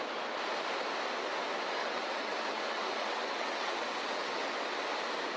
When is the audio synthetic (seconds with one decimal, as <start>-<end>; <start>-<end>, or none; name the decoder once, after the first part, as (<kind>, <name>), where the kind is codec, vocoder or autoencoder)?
1.8-4.9 (vocoder, WaveNeXt)